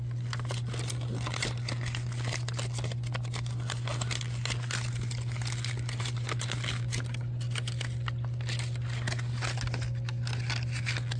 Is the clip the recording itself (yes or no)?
yes